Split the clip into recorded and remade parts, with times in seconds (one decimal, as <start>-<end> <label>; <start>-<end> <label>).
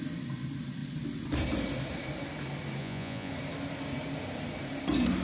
0.0-2.8 recorded; 2.8-3.3 remade; 3.3-5.2 recorded